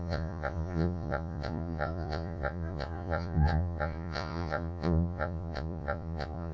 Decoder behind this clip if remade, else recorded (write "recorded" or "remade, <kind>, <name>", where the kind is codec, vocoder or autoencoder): remade, vocoder, Vocos